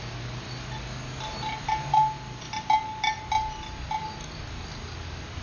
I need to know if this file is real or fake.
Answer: real